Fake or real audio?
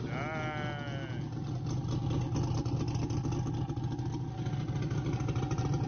real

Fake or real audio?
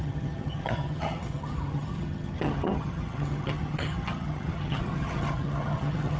fake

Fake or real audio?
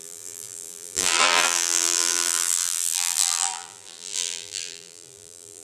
fake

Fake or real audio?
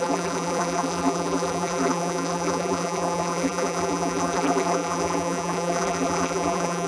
fake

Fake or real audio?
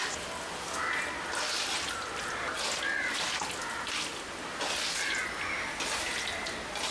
real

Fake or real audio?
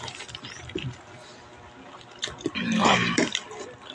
real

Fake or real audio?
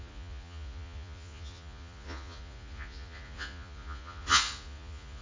fake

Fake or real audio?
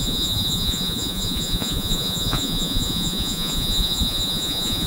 fake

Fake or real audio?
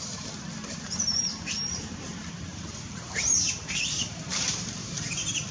fake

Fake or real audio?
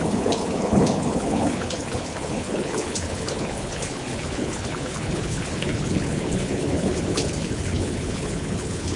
fake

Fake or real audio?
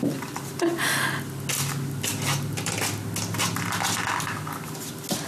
real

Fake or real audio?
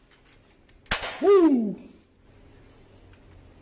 real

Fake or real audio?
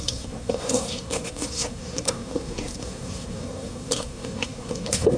fake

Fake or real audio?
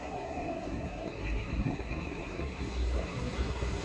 fake